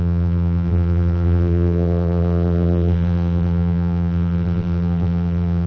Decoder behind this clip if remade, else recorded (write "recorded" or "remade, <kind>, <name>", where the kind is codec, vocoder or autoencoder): remade, vocoder, BigVGAN v2